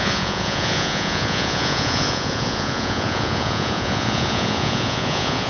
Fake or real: fake